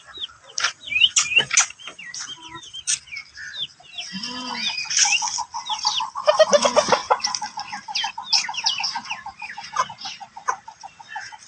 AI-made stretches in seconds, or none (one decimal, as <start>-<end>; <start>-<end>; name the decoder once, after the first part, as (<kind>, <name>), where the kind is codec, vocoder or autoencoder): none